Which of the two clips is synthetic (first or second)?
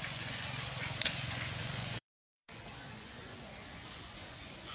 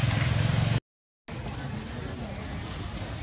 first